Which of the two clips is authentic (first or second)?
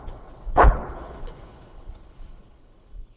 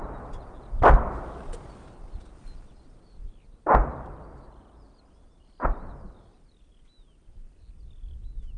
second